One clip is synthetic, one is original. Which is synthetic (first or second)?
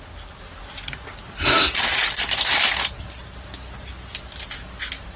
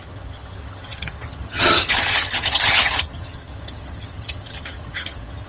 second